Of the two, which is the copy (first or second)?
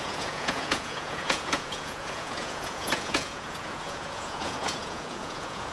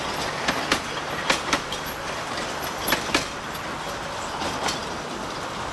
first